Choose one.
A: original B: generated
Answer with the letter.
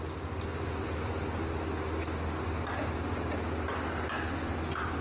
A